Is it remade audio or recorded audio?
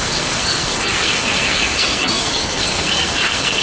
remade